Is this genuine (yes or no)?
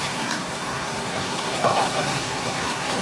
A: no